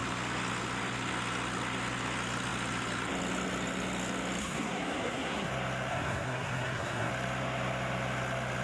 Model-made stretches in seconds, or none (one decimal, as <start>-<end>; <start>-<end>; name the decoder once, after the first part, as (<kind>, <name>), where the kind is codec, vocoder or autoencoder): 4.4-5.5 (codec, SNAC); 5.9-7.1

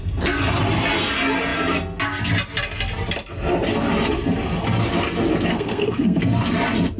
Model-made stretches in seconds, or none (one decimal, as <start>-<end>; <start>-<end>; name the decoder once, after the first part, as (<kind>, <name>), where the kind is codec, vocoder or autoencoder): 5.5-6.2 (codec, SNAC)

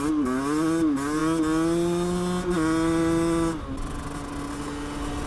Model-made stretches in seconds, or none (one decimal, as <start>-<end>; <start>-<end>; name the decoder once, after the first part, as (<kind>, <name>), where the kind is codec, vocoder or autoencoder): none

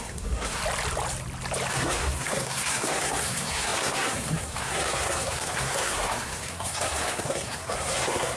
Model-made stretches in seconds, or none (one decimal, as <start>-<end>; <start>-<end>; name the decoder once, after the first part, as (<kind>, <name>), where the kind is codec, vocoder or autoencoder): 0.0-0.6 (codec, SNAC); 1.7-8.4